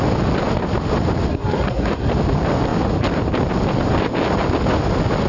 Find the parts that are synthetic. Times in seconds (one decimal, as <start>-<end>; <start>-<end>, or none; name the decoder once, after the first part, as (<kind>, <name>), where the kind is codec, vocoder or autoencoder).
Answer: 1.3-2.1 (codec, SNAC)